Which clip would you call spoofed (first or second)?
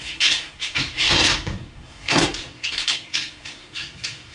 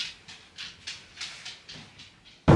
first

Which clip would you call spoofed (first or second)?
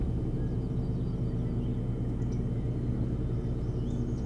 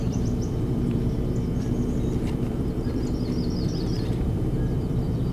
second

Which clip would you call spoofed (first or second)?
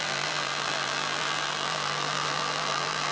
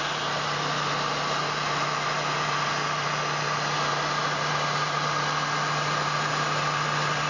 first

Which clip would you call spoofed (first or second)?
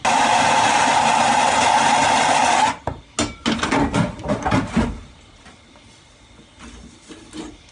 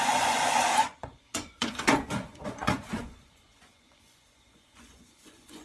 second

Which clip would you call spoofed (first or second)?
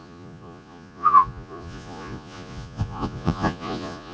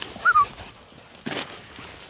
first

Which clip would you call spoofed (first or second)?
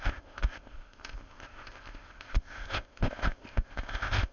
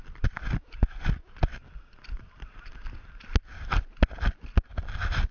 first